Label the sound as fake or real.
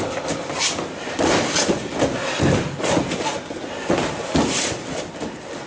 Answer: real